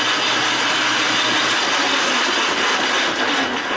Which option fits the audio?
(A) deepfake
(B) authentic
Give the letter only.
B